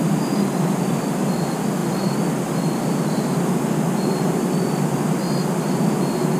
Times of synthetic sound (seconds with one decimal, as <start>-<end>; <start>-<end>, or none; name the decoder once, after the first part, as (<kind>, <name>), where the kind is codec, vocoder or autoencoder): none